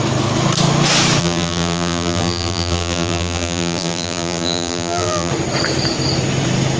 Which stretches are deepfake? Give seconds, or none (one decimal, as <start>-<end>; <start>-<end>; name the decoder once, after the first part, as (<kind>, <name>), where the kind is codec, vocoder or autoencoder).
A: 1.2-5.3 (vocoder, BigVGAN v2)